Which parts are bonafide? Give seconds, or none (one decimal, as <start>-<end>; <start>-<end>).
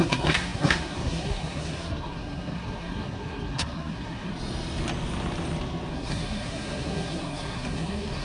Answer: 4.3-5.9